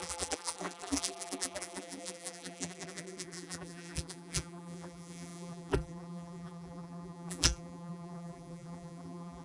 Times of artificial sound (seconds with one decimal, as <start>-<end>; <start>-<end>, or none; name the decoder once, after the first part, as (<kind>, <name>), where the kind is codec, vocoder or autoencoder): 0.0-9.4 (vocoder, BigVGAN v2)